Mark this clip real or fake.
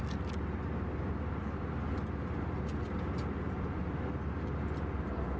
real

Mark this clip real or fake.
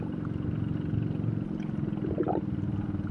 real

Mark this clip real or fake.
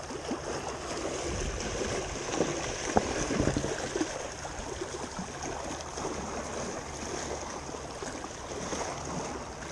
real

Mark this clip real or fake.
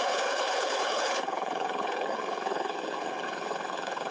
fake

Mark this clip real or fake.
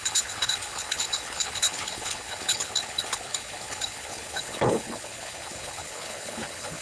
fake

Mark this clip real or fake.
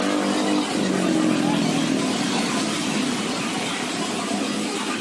real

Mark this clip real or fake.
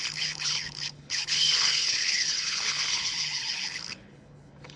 fake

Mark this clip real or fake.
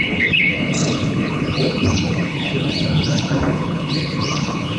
fake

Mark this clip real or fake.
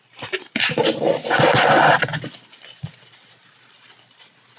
real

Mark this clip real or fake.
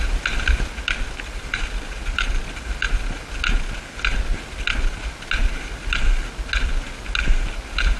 real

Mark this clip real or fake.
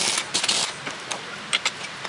real